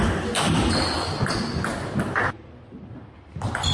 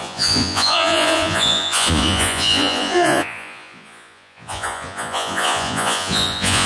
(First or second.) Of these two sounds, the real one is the first